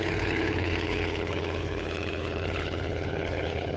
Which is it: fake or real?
fake